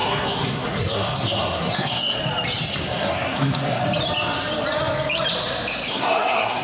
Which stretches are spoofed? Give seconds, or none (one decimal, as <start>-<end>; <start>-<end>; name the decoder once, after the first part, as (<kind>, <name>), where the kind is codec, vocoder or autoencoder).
0.0-2.2 (codec, SNAC); 2.8-3.8; 5.9-6.6